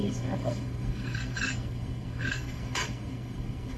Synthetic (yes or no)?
yes